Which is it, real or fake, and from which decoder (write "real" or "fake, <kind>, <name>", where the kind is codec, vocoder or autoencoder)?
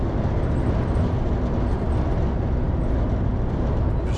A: real